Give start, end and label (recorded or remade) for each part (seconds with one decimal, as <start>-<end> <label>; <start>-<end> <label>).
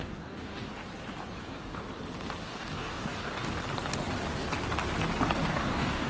0.0-0.7 remade; 0.7-1.4 recorded; 1.4-1.8 remade; 1.8-2.4 recorded; 2.4-3.6 remade; 3.6-5.5 recorded; 5.5-6.1 remade